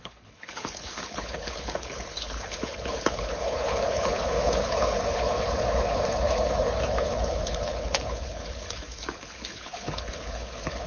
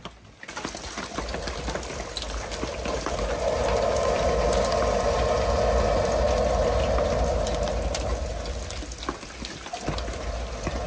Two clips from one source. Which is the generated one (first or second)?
first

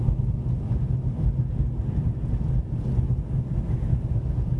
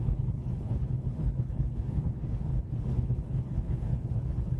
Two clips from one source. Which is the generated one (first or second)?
second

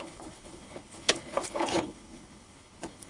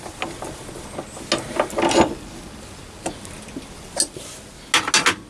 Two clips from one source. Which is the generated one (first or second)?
first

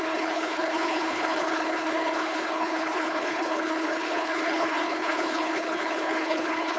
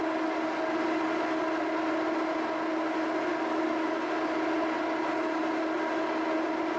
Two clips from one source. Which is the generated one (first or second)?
first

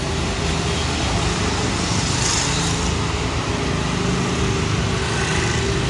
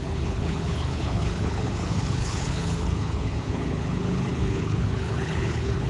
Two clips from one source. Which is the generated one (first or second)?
second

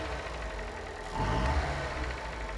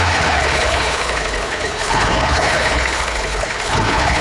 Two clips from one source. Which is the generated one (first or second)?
second